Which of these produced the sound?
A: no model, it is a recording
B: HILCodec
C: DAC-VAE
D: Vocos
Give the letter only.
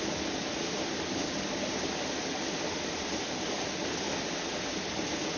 A